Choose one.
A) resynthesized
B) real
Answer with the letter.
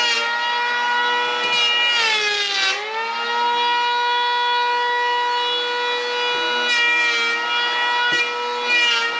B